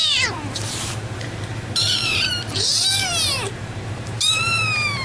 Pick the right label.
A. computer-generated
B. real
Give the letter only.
A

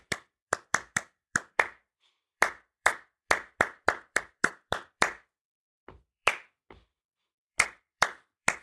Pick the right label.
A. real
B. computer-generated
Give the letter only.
B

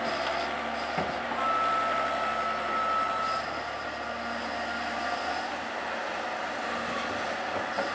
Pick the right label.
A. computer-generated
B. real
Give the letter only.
B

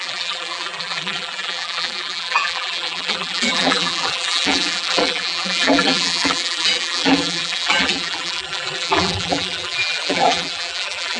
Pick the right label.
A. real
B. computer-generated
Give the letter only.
B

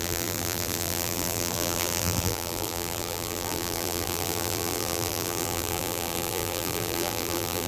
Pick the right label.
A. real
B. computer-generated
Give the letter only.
B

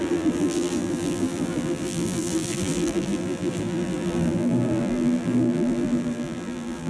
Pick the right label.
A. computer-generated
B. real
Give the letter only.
A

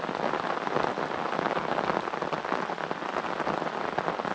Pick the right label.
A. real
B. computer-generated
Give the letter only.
A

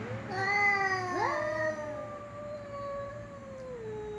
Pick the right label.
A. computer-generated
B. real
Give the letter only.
A